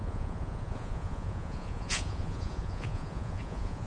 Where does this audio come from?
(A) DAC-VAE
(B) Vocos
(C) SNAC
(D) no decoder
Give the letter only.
B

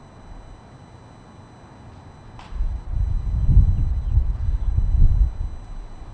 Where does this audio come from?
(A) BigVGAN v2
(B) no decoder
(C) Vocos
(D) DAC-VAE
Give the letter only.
B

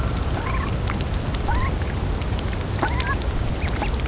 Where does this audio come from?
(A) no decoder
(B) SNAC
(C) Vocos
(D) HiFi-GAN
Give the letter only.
A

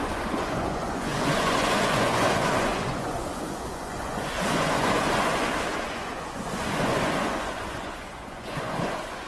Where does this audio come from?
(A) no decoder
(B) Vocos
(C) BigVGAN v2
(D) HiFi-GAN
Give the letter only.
B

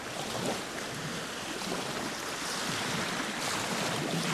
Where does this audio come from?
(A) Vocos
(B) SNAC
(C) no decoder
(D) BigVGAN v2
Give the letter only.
C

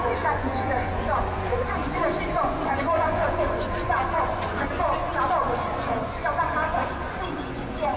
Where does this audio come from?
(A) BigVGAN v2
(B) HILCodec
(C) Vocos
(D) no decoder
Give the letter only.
C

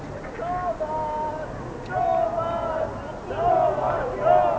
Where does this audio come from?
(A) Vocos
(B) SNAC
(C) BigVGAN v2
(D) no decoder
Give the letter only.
D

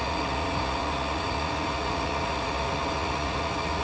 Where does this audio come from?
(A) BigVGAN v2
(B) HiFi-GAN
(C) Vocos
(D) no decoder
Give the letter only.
C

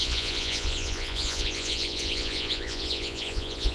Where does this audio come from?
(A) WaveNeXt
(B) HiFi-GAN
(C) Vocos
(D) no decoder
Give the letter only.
C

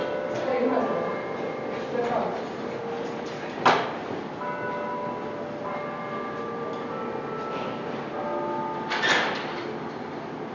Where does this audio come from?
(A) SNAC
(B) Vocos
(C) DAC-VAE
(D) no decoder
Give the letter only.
D